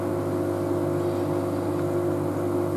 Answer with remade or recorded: recorded